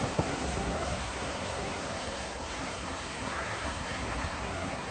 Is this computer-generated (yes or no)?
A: yes